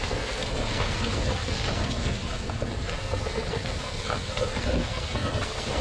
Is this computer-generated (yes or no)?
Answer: yes